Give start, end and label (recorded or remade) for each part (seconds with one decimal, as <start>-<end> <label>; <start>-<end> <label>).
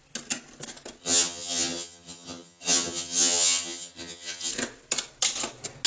0.0-1.0 recorded; 1.0-4.5 remade; 4.5-5.9 recorded